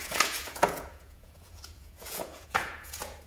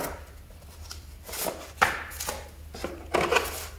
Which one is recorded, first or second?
second